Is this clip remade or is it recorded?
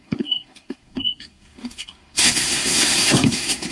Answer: remade